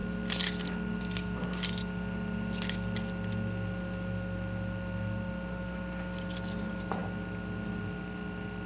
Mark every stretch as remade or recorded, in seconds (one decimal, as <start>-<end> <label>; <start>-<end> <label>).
0.0-8.7 recorded